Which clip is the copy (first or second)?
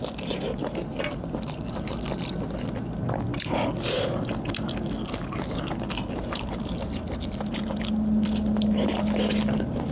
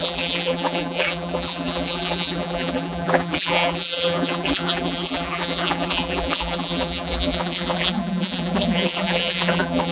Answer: second